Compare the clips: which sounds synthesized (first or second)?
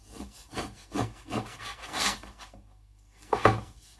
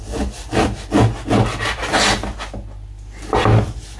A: first